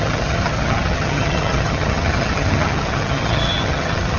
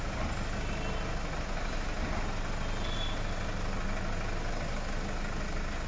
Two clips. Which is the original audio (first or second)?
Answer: second